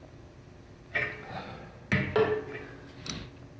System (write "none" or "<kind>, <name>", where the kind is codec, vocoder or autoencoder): none